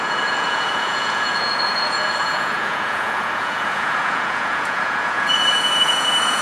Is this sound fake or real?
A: fake